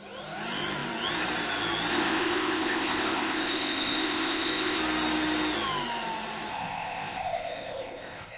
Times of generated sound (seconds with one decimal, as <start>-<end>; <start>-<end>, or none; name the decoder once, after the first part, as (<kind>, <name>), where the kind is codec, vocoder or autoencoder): 1.9-4.8 (codec, ZipCodec); 6.5-8.4